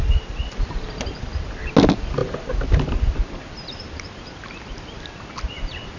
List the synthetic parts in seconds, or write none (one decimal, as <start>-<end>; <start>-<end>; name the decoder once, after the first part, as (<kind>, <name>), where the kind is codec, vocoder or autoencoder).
none